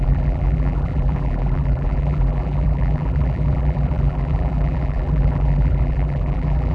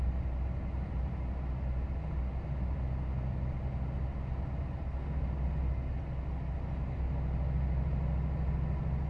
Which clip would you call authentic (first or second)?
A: second